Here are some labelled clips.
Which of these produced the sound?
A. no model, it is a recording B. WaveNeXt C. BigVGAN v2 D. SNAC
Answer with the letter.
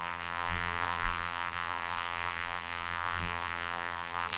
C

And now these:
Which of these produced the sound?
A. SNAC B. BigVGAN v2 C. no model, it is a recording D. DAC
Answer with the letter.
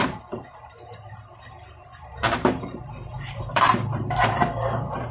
B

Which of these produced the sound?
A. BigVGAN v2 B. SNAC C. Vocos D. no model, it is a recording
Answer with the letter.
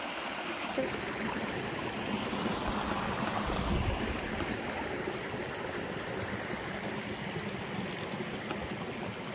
A